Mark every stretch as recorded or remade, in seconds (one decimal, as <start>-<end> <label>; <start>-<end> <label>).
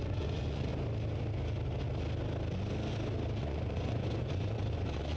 0.0-0.7 remade; 0.7-3.4 recorded; 3.4-5.2 remade